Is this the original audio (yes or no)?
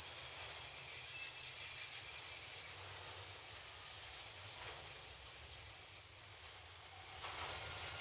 yes